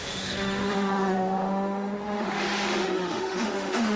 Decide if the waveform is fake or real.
fake